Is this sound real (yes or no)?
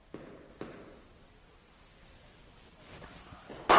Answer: yes